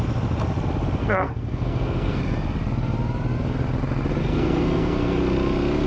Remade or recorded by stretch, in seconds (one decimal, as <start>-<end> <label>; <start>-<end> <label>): 0.0-1.0 recorded; 1.0-2.2 remade; 2.2-4.2 recorded; 4.2-5.2 remade; 5.2-5.9 recorded